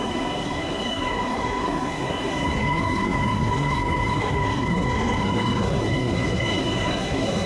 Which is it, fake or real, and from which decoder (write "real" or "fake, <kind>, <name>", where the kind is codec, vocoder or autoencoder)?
fake, codec, SNAC